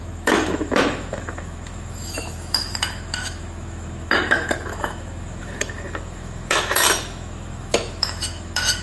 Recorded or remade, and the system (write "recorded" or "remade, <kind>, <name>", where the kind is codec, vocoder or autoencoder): remade, autoencoder, DAC-VAE